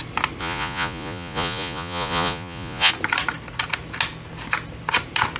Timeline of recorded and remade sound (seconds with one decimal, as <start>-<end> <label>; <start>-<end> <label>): 0.0-0.4 recorded; 0.4-2.9 remade; 2.9-5.4 recorded